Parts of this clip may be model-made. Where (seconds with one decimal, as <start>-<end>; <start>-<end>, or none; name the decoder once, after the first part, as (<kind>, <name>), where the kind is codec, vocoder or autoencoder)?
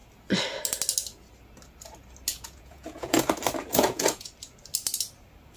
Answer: 2.3-3.2 (vocoder, Vocos); 3.7-4.3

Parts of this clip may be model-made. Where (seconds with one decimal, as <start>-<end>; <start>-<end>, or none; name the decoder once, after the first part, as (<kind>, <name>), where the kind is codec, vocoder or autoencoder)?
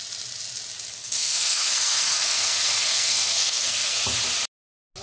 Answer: 1.0-4.0 (codec, SNAC)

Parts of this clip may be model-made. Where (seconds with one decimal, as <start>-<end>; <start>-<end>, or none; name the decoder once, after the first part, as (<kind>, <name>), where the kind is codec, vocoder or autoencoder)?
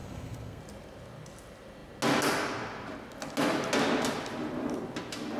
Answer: 0.0-0.6 (codec, SNAC)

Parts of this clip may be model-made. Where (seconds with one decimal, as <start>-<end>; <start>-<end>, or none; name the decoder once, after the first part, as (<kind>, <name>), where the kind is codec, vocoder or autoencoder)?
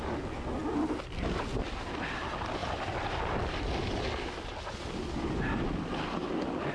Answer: none